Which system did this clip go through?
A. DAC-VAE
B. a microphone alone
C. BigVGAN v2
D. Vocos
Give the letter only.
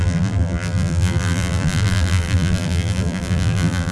C